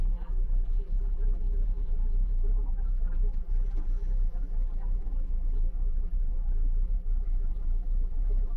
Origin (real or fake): fake